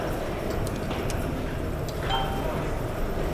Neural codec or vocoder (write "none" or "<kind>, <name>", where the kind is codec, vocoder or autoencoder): none